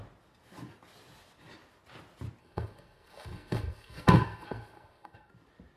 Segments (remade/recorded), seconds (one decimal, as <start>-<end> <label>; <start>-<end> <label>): 0.0-2.4 recorded; 2.4-5.3 remade; 5.3-5.8 recorded